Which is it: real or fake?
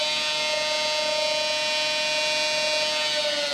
real